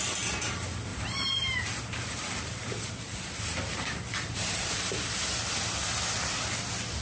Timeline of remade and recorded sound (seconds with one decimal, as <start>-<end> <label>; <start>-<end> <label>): 0.0-0.9 recorded; 0.9-5.1 remade; 5.1-7.0 recorded